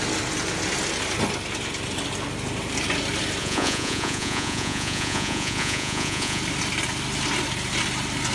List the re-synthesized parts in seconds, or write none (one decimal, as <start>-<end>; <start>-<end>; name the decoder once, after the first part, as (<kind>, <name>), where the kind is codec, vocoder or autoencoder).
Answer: 3.4-6.4 (vocoder, Vocos)